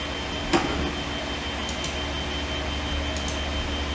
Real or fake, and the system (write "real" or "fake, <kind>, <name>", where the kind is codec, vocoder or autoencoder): real